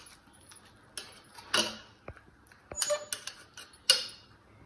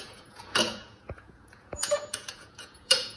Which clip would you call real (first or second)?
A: first